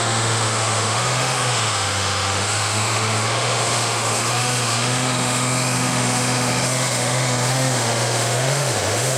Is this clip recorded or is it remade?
remade